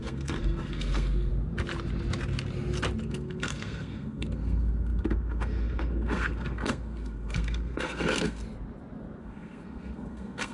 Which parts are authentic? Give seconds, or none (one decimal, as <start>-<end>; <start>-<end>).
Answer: 1.3-3.0; 8.4-9.2

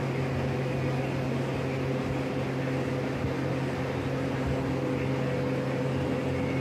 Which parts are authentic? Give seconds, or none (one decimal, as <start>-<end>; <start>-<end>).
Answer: 0.0-6.6

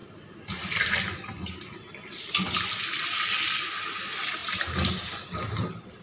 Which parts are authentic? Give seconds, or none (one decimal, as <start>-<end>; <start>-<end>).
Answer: 0.0-4.4